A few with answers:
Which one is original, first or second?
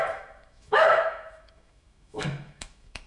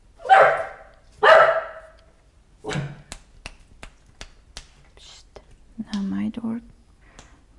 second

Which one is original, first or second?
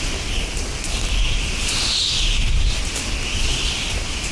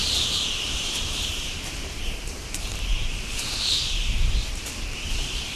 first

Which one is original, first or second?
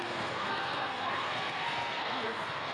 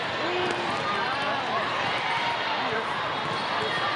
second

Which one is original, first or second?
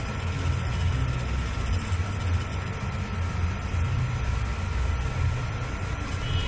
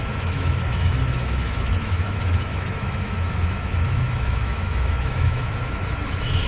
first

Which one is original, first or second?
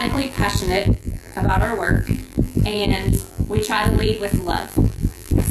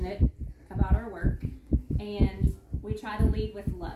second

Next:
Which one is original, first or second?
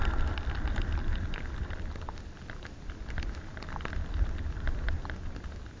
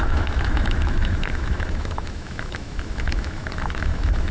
first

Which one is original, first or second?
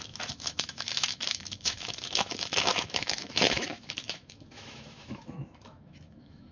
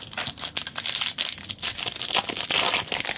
second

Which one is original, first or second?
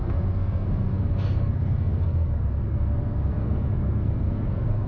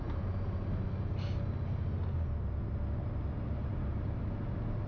second